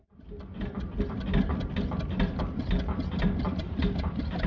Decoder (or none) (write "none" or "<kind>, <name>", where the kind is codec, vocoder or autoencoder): none